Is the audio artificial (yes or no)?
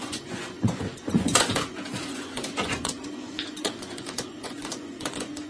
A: yes